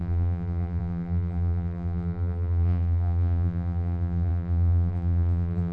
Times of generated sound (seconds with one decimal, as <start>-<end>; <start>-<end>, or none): 0.0-5.7